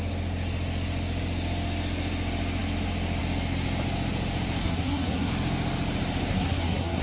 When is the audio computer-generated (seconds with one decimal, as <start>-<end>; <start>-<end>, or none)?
4.6-5.3; 6.3-7.0